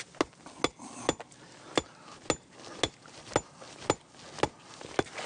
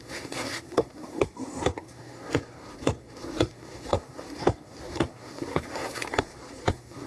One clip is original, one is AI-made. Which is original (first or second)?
first